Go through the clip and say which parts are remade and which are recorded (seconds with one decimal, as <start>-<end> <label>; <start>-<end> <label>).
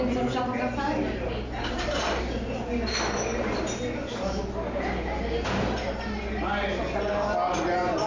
0.0-8.1 recorded